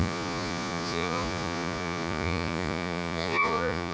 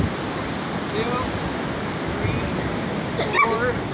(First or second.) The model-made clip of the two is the first